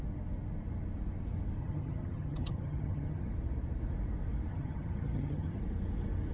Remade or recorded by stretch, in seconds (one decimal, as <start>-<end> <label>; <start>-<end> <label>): 0.0-1.6 recorded; 1.6-3.3 remade; 3.3-4.5 recorded; 4.5-5.6 remade; 5.6-6.3 recorded